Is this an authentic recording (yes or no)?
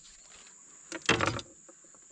yes